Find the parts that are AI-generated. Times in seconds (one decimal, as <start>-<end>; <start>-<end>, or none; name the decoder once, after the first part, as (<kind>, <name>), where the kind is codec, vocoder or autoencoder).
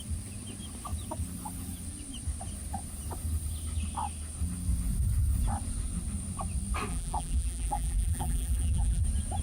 6.9-9.0 (vocoder, BigVGAN v2)